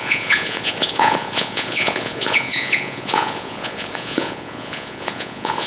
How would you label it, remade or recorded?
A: remade